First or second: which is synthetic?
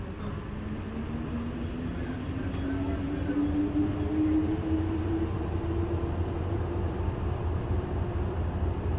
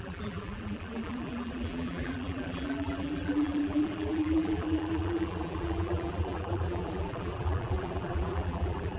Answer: second